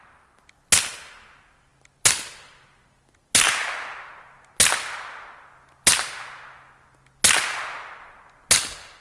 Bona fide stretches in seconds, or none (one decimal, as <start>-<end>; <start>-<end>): 0.0-9.0